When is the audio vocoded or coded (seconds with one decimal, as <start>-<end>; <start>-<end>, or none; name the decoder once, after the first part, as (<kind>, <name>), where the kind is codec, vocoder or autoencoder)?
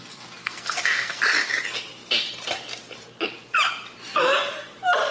0.4-1.2 (codec, SNAC)